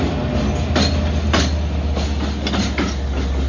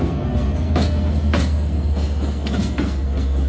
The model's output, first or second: second